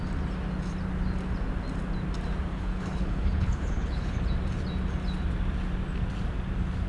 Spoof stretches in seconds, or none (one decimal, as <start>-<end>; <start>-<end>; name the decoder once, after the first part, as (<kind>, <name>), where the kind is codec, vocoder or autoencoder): 2.5-4.2 (codec, HILCodec)